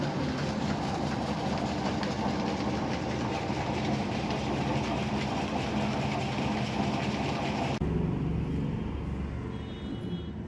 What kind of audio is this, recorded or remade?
recorded